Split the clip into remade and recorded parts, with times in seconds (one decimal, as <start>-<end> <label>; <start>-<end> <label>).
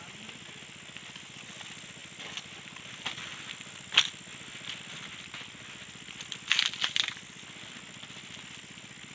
0.0-9.1 recorded